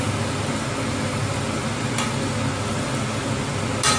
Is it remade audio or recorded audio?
recorded